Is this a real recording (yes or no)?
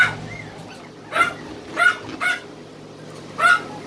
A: yes